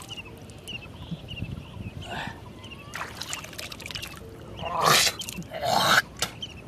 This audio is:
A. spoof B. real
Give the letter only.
B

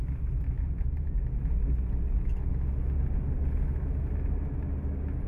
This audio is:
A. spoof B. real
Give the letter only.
B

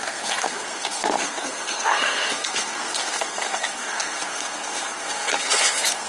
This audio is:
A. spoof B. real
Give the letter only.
A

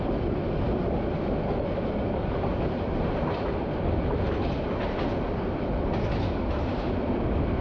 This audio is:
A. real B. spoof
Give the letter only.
A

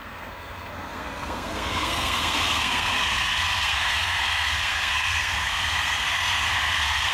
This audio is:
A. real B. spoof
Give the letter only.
B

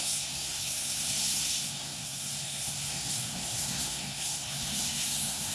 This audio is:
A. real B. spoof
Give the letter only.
B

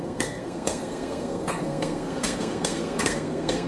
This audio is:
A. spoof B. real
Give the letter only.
A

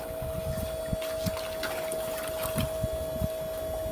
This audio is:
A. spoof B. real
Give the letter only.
B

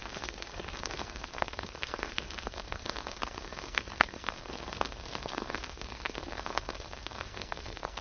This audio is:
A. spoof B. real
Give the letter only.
A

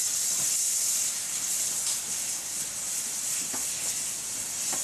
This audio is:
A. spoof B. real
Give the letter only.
B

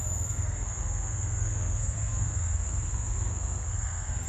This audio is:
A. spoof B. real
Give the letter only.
A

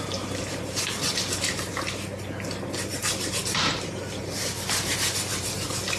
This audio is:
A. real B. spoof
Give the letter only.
A